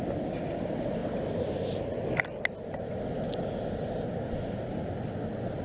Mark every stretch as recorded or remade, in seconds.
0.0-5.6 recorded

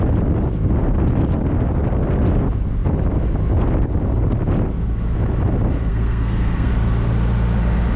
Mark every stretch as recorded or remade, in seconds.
0.0-5.9 recorded; 5.9-6.7 remade; 6.7-8.0 recorded

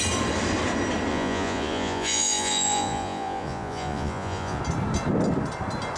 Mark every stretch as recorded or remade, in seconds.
0.0-1.1 recorded; 1.1-4.6 remade; 4.6-6.0 recorded